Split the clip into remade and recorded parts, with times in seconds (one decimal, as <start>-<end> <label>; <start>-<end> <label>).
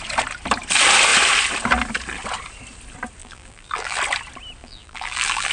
0.0-3.2 recorded; 3.2-4.0 remade; 4.0-4.6 recorded; 4.6-5.5 remade